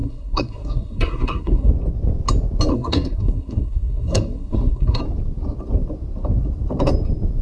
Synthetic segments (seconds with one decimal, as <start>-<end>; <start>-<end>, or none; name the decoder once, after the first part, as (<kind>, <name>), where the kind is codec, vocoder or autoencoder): 0.0-1.7 (codec, SNAC); 2.7-5.0